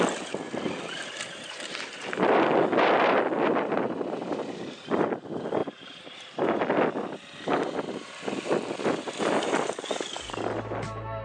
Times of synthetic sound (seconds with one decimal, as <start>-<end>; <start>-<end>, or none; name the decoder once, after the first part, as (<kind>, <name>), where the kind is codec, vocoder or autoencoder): none